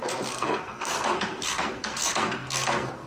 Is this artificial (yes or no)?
yes